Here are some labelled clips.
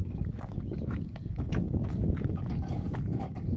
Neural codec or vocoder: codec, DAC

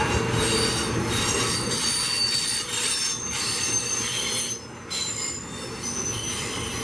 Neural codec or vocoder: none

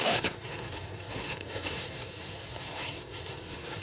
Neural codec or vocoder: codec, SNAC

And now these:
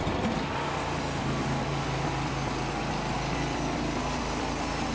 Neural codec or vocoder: none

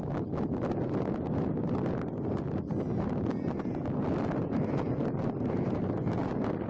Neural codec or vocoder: none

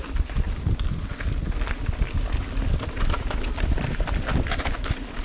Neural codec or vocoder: none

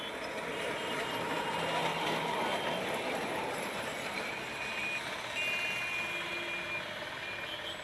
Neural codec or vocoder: none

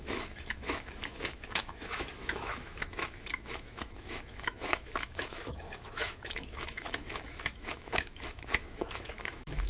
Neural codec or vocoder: autoencoder, DAC-VAE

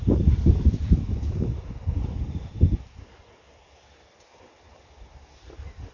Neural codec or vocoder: none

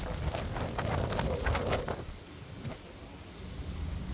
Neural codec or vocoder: none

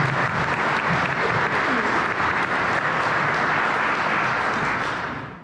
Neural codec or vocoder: none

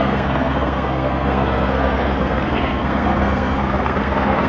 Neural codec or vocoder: codec, SNAC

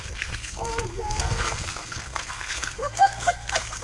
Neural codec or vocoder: codec, SNAC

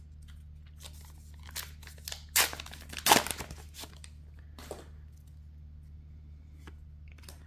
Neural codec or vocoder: none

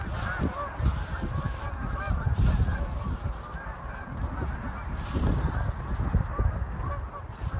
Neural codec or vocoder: none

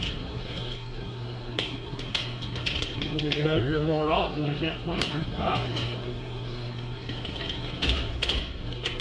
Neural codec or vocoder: codec, SNAC